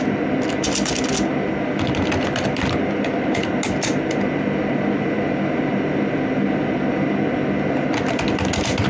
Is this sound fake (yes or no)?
no